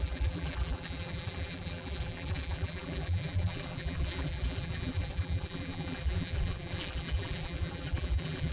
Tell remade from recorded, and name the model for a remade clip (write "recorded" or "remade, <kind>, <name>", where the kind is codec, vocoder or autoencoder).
remade, vocoder, BigVGAN v2